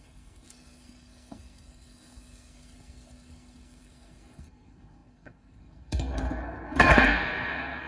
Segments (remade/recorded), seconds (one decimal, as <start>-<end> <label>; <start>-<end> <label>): 0.0-7.9 remade